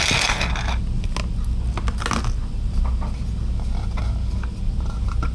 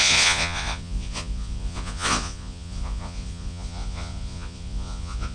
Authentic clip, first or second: first